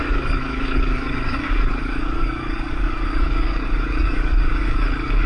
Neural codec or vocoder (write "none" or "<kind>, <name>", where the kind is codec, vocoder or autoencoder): codec, DAC